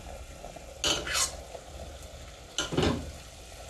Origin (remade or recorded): recorded